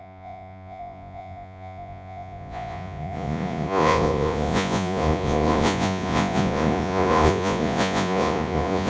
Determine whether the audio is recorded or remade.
remade